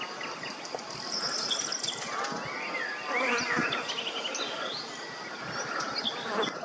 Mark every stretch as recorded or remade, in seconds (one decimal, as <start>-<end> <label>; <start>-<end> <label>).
0.0-6.6 recorded

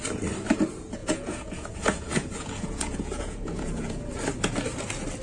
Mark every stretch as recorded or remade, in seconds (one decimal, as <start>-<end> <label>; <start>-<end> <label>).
0.0-1.0 recorded; 1.0-4.1 remade; 4.1-5.2 recorded